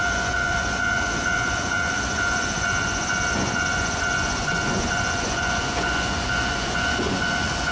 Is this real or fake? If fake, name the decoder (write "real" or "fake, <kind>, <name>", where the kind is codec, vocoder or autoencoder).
fake, vocoder, Vocos